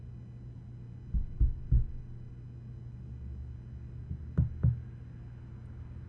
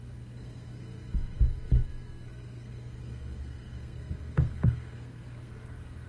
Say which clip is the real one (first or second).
first